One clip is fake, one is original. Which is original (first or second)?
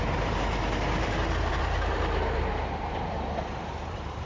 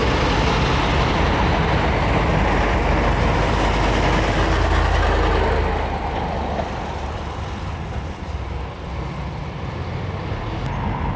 second